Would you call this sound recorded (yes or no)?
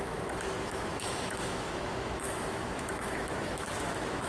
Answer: no